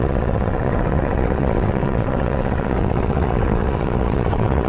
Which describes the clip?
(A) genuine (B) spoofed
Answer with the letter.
B